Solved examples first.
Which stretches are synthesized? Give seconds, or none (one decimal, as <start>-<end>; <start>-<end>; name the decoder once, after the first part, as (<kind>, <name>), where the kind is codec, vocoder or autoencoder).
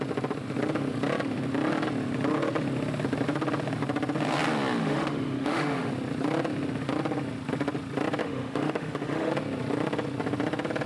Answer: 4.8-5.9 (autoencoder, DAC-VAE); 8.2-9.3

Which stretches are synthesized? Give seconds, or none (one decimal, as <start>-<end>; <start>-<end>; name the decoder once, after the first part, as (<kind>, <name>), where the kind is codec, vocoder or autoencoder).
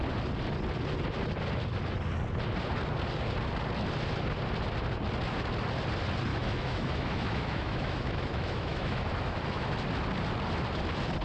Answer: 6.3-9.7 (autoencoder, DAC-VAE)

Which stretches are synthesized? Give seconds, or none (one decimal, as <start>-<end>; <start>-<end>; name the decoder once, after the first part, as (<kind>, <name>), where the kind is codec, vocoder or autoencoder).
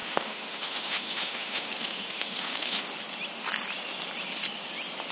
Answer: 0.0-2.8 (autoencoder, DAC-VAE)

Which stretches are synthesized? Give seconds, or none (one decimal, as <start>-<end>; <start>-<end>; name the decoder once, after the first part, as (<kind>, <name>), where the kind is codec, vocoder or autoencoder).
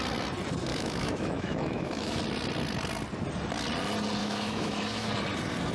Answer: 0.7-2.2 (autoencoder, DAC-VAE); 4.2-5.1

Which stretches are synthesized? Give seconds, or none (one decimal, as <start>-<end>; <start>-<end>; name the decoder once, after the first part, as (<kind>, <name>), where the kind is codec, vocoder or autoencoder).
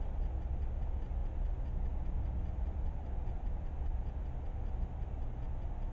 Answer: none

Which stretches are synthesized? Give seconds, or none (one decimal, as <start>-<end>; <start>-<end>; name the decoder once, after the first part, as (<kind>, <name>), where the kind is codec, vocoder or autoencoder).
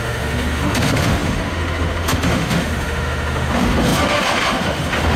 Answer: 0.0-5.2 (autoencoder, DAC-VAE)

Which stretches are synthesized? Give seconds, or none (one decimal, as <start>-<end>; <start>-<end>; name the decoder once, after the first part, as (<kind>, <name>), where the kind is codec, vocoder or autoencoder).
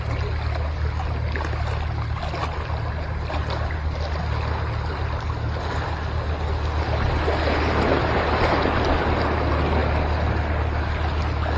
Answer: none